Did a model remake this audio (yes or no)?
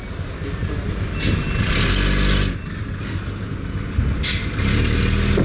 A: no